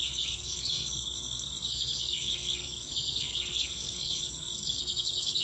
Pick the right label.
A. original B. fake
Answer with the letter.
B